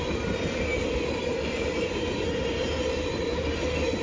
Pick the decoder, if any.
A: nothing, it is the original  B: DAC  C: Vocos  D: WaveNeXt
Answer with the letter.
A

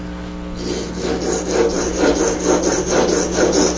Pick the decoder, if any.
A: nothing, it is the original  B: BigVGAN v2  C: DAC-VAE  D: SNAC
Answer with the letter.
A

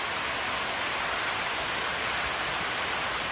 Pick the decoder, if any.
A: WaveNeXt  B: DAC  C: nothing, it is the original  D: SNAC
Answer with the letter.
C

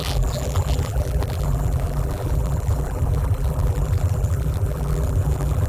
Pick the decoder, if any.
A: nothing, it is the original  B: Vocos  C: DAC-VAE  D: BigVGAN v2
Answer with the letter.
D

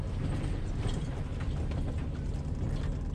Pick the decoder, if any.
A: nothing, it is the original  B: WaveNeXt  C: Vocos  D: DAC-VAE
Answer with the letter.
A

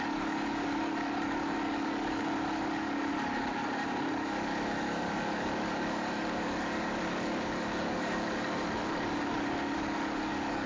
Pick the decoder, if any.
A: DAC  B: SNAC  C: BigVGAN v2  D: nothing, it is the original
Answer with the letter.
A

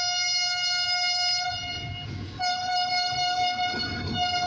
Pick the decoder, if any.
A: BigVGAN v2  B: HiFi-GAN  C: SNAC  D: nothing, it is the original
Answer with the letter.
D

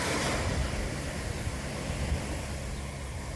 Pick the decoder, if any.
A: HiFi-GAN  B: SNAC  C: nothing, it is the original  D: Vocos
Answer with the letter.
C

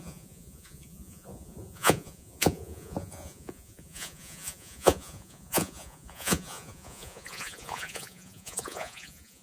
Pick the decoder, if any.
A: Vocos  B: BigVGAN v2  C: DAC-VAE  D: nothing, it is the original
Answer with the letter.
A